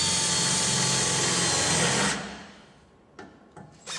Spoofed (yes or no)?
no